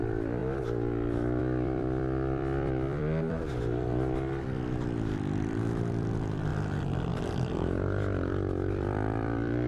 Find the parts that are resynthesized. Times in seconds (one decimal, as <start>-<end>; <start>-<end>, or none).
0.0-0.4; 1.4-6.5; 7.1-9.7